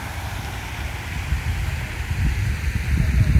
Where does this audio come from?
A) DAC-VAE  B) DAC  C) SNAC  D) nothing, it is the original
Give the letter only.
D